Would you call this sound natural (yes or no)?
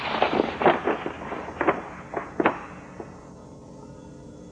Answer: yes